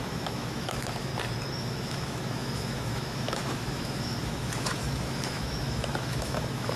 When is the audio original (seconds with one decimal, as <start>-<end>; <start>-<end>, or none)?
1.1-1.6